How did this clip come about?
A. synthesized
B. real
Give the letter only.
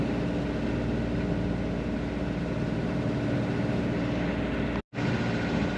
B